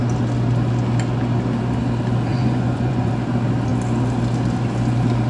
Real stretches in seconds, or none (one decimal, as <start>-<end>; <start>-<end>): 0.0-2.3; 3.1-5.3